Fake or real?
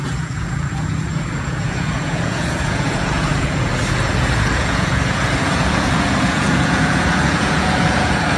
fake